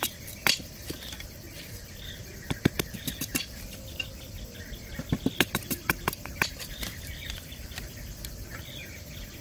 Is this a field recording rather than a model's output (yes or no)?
no